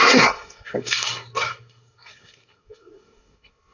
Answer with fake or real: fake